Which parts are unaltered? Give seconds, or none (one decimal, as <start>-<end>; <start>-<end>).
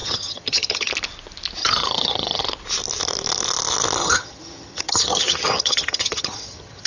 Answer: 0.9-1.6; 2.4-4.0